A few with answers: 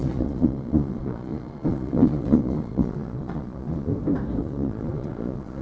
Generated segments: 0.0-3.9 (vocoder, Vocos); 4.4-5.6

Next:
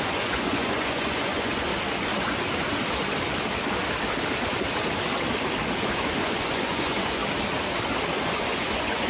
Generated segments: 0.0-1.7 (vocoder, Vocos); 5.8-7.2; 8.2-9.1

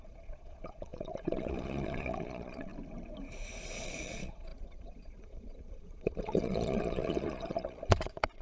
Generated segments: 0.0-2.7 (vocoder, Vocos); 3.8-8.4

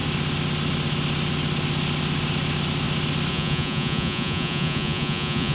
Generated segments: 3.3-5.5 (vocoder, Vocos)

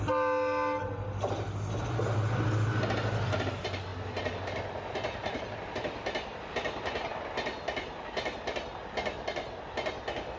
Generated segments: none

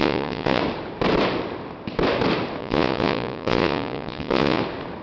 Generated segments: 0.0-0.6 (vocoder, Vocos); 2.6-4.6